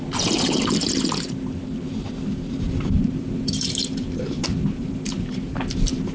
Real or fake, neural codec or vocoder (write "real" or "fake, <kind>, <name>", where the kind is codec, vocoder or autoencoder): fake, vocoder, BigVGAN v2